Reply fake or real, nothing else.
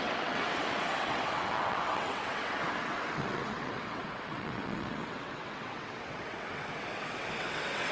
fake